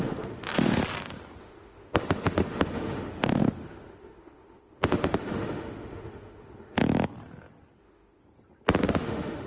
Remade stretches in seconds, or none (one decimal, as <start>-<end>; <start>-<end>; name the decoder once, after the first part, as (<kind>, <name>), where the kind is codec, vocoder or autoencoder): 0.0-0.8 (autoencoder, DAC-VAE); 1.4-6.8; 7.8-8.2; 8.8-9.5